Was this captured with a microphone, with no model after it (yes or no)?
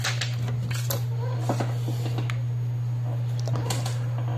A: yes